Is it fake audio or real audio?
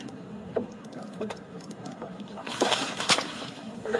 fake